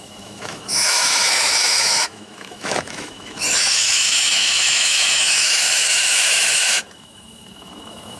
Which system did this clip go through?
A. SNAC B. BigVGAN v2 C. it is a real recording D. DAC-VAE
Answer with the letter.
D